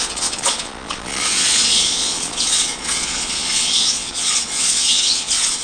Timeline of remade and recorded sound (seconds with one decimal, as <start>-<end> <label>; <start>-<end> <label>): 0.0-5.6 remade